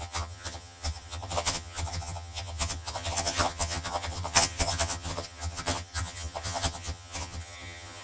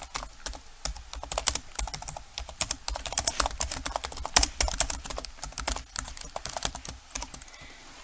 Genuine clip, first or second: second